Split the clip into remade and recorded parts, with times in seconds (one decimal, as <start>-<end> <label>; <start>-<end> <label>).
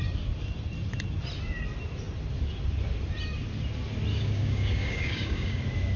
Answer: 0.0-4.1 recorded; 4.1-5.6 remade; 5.6-6.0 recorded